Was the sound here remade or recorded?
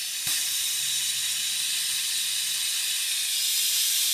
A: recorded